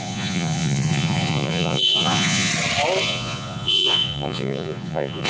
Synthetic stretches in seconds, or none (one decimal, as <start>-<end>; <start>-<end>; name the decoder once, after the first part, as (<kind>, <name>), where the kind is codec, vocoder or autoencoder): 0.0-2.5 (vocoder, Vocos); 3.0-5.3